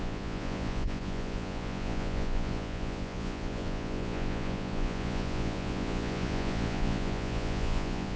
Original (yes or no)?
no